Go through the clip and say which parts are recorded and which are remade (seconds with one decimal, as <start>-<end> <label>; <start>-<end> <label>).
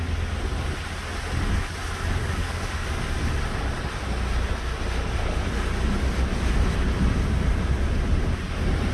0.0-2.2 recorded; 2.2-3.0 remade; 3.0-8.9 recorded